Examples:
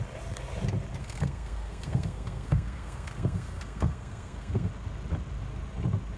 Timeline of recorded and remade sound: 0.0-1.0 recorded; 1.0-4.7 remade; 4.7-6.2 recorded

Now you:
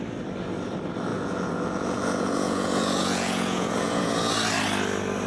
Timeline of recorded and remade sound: 0.0-1.1 recorded; 1.1-4.3 remade; 4.3-5.3 recorded

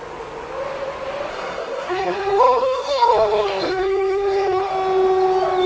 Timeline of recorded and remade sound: 0.0-1.3 recorded; 1.3-4.7 remade; 4.7-5.7 recorded